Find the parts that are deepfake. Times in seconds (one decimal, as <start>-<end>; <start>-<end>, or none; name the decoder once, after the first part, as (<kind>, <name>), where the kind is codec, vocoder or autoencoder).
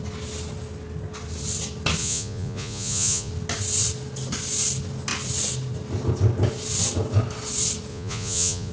2.0-3.3 (vocoder, Vocos); 7.9-8.7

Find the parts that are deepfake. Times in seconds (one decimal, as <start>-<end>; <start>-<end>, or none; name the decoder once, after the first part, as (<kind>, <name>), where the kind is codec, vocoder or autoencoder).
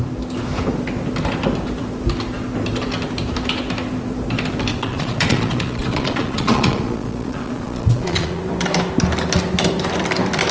4.7-8.4 (vocoder, Vocos)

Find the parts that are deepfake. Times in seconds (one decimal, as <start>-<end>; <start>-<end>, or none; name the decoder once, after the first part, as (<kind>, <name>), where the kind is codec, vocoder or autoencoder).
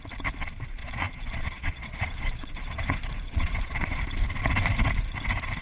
0.8-4.0 (vocoder, Vocos)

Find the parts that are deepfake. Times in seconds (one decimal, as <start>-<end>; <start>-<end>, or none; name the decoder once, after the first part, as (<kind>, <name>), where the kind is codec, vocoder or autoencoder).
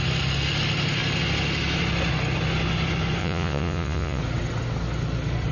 3.2-4.2 (vocoder, Vocos)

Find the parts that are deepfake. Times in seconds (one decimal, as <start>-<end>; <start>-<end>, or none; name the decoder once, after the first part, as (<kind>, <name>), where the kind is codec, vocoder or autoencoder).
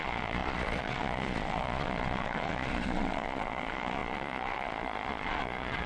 0.0-5.9 (vocoder, Vocos)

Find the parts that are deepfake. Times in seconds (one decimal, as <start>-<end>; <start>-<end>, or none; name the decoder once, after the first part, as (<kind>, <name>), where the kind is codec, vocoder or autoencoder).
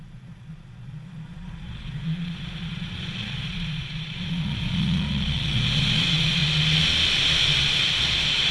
0.0-6.4 (vocoder, Vocos); 7.8-8.5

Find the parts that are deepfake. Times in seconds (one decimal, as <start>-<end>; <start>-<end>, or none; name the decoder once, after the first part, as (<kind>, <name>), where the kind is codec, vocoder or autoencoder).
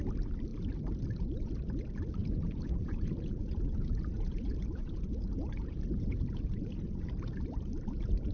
2.2-7.1 (vocoder, Vocos)